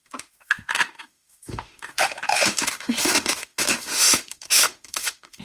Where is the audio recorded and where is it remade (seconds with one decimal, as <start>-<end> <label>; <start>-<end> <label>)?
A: 0.0-5.4 remade